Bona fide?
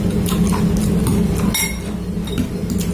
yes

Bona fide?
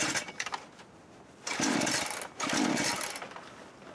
yes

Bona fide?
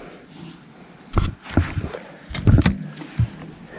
yes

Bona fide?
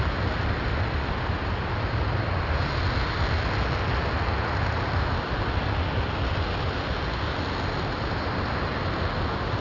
yes